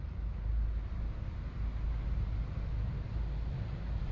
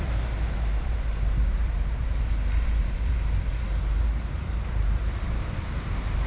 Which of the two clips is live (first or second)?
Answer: first